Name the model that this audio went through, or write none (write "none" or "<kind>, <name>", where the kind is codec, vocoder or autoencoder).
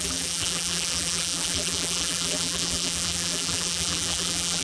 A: vocoder, BigVGAN v2